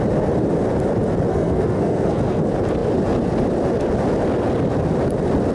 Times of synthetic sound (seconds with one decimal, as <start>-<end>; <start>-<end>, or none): 1.3-2.4